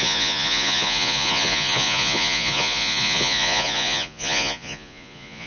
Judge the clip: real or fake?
fake